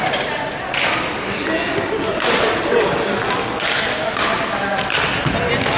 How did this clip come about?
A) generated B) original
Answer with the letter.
B